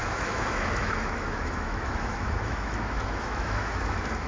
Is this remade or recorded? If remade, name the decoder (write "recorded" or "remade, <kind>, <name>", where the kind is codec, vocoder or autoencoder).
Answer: remade, autoencoder, DAC-VAE